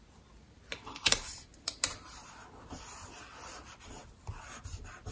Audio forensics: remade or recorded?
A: recorded